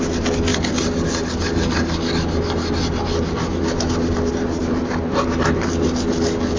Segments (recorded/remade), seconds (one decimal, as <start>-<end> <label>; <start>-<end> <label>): 0.0-6.6 recorded